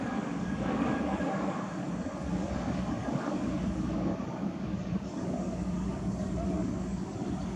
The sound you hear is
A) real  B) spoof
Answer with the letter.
B